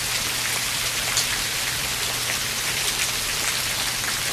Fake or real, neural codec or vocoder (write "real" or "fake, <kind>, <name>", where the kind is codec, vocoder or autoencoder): fake, vocoder, BigVGAN v2